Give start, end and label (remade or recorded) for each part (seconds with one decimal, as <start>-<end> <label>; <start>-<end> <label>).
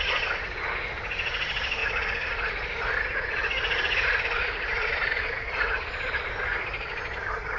0.0-7.6 recorded